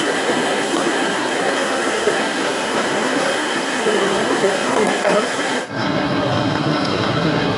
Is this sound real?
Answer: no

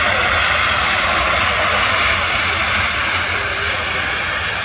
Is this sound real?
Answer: yes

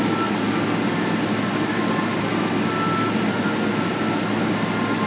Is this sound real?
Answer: yes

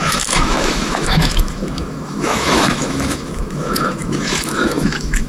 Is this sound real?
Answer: no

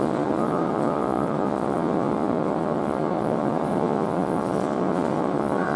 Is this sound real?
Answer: no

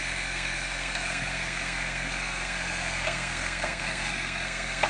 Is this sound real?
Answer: no